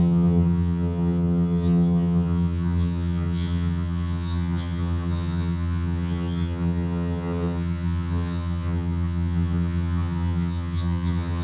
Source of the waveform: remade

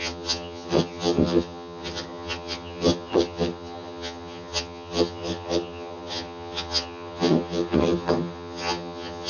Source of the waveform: remade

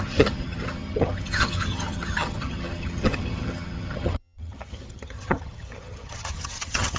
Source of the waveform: remade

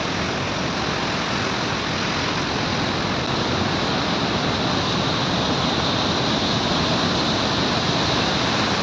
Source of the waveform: recorded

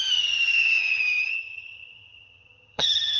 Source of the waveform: remade